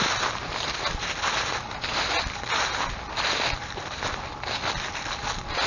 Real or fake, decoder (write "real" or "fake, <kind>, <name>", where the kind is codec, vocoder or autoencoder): real